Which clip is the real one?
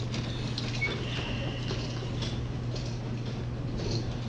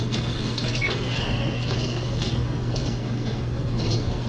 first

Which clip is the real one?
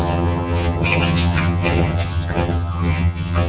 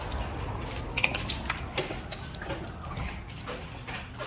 second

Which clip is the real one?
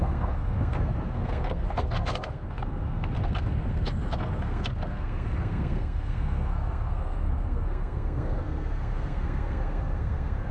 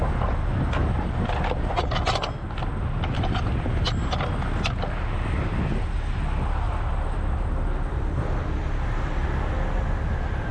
second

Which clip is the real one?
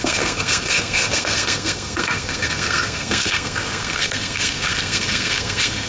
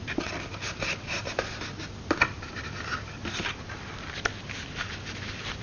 second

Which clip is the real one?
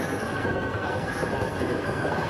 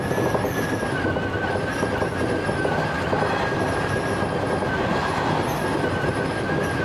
second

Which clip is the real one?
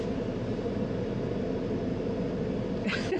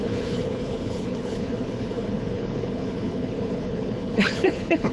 first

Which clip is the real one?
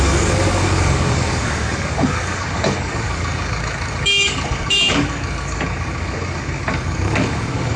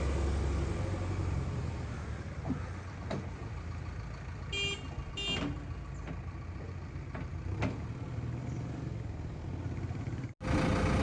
second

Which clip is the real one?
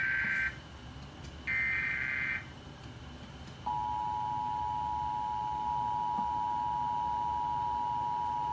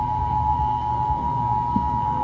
first